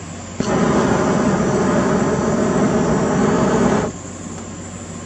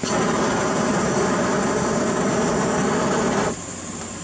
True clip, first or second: first